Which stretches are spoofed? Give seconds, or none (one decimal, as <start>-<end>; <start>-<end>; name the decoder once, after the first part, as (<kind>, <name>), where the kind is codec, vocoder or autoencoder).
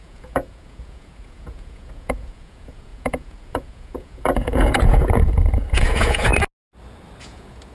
0.0-6.3 (vocoder, Vocos); 7.2-7.7